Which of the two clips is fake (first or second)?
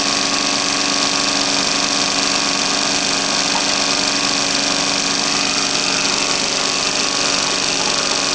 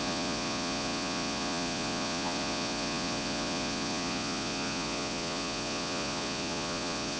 second